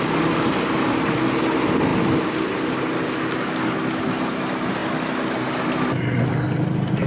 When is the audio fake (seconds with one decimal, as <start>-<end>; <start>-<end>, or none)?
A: none

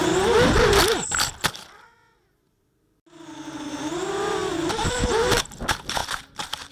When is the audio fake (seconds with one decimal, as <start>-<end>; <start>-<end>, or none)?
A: 4.4-5.0

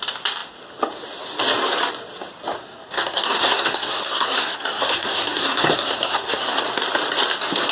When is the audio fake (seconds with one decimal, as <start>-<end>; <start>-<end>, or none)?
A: 2.6-6.6

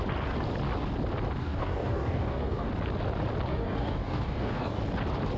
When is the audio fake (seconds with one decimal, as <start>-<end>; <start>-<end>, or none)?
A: 1.4-2.7; 3.5-4.8

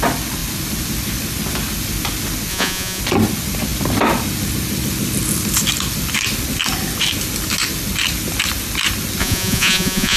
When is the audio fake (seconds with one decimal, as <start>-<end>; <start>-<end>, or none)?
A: 2.5-3.0; 9.2-10.2

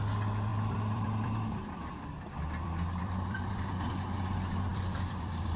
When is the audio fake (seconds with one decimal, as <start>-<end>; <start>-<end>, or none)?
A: 0.5-3.9; 4.7-5.6

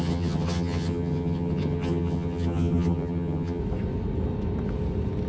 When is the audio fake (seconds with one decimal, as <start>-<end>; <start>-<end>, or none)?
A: 0.0-3.6